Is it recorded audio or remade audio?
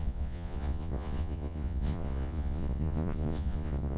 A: remade